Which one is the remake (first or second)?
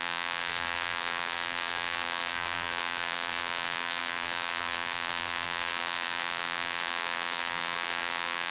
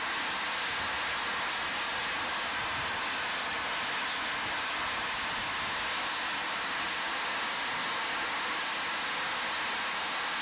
first